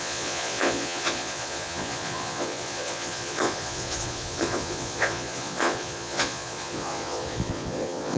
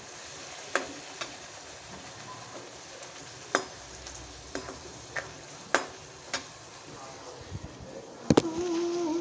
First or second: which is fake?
first